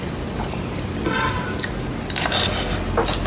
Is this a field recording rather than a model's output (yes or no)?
yes